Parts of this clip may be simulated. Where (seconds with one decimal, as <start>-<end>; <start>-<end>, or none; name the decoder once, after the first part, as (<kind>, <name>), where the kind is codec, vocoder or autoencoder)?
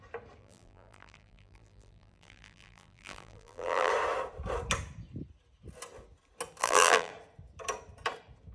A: 0.4-3.9 (vocoder, BigVGAN v2); 6.6-7.1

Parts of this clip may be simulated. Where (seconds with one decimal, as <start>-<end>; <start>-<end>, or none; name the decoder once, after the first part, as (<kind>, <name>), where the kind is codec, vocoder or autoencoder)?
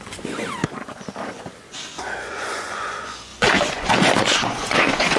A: 0.0-5.2 (vocoder, Vocos)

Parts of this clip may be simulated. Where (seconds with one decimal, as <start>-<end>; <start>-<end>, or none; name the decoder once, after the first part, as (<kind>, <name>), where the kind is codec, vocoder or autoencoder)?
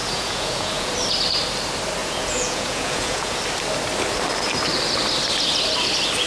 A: 0.0-0.9 (vocoder, Vocos); 2.0-3.4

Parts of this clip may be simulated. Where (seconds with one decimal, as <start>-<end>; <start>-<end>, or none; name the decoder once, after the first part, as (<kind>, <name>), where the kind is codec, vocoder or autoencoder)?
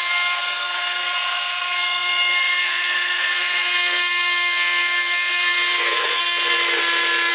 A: 0.0-6.2 (codec, SNAC)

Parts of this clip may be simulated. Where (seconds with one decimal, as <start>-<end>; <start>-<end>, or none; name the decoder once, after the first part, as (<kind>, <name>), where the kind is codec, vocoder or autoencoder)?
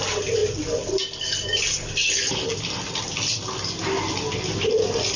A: none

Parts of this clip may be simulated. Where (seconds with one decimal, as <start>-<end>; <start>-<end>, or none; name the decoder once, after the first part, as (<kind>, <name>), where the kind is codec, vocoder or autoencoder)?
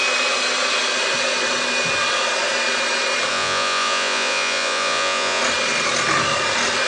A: 3.3-5.4 (vocoder, Vocos)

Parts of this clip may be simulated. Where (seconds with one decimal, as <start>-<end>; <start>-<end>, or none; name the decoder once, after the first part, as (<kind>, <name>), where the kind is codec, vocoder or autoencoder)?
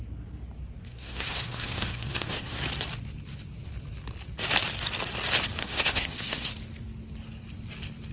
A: 0.8-2.6 (codec, SNAC); 5.6-6.5